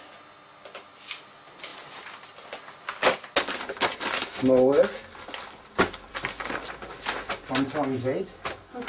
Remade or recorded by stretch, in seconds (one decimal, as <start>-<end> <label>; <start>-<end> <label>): 0.0-8.9 recorded